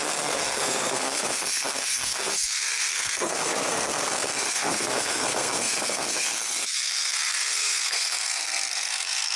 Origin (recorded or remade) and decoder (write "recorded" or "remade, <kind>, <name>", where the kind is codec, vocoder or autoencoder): remade, codec, SNAC